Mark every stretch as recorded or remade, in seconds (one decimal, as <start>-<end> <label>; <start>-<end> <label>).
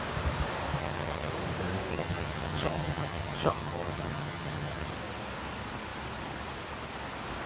0.0-0.8 recorded; 0.8-1.3 remade; 1.3-1.9 recorded; 1.9-4.9 remade; 4.9-7.5 recorded